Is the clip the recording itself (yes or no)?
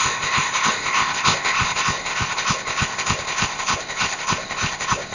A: no